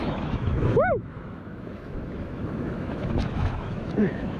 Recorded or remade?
remade